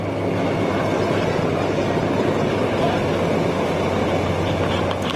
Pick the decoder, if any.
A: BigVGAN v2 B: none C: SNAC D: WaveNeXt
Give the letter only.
B